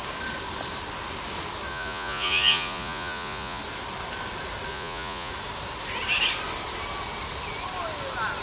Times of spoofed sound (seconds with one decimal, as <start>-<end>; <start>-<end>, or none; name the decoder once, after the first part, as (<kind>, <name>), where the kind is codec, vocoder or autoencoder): 1.7-3.6 (vocoder, Vocos); 4.7-5.3